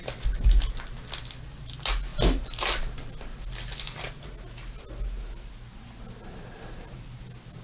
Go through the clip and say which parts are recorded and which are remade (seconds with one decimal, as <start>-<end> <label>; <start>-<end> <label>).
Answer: 0.0-7.6 recorded